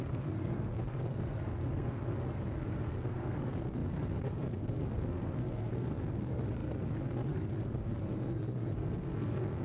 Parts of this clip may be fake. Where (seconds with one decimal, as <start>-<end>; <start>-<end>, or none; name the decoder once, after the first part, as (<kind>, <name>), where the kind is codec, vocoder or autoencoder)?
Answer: 0.0-9.6 (codec, SNAC)